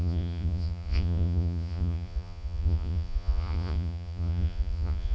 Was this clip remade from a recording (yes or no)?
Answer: yes